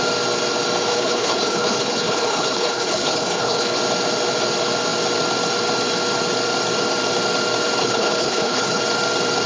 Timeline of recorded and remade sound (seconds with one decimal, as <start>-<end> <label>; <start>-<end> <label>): 0.0-0.9 recorded; 0.9-3.8 remade; 3.8-7.8 recorded; 7.8-8.8 remade; 8.8-9.5 recorded